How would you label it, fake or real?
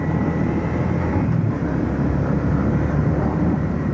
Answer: fake